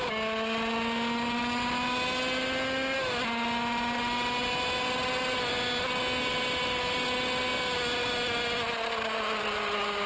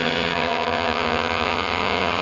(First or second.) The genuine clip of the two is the first